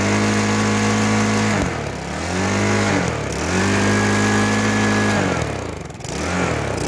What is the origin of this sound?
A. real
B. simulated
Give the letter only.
A